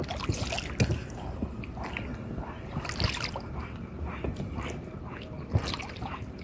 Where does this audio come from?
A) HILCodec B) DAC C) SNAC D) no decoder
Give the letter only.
D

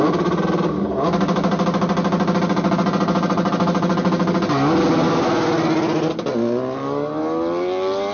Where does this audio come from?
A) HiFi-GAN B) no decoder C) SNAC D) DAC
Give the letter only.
B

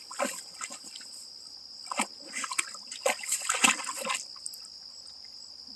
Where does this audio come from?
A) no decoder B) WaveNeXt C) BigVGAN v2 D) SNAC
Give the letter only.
A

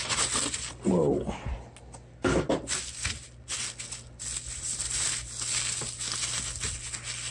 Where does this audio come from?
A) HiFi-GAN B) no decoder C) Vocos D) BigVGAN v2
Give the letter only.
B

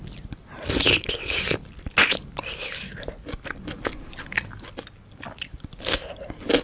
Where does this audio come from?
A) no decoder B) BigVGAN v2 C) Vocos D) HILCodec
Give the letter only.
A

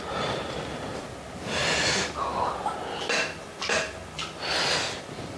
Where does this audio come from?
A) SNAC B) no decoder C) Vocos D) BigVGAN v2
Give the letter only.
B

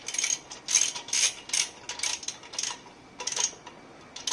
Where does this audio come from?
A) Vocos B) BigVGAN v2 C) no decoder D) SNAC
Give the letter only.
C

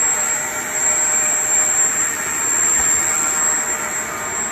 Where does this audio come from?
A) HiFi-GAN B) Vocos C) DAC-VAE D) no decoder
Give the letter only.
D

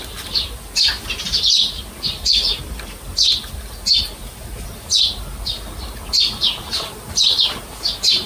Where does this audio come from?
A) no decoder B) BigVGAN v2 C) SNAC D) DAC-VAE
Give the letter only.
A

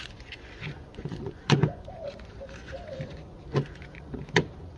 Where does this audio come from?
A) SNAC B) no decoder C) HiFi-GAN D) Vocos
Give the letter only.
D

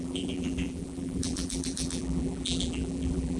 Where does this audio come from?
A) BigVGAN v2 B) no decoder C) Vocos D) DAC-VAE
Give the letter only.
A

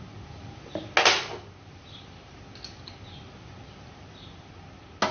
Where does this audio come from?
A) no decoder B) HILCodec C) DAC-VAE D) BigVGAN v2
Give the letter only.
A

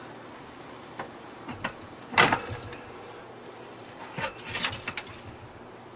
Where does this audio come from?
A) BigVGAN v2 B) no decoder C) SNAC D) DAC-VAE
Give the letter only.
B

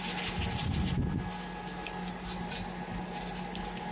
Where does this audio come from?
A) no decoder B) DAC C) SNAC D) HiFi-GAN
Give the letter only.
A